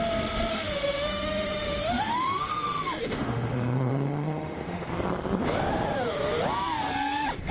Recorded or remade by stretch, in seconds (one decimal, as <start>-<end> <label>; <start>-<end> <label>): 0.0-0.5 recorded; 0.5-4.9 remade; 4.9-7.5 recorded